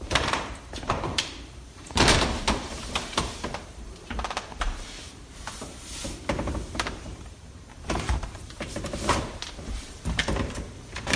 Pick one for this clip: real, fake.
fake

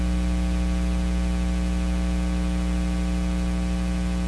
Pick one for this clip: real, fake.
real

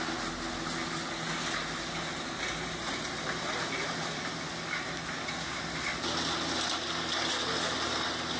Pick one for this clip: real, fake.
real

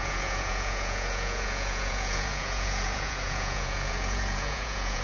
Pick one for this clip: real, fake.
fake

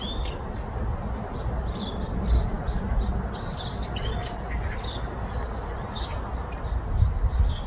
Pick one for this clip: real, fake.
real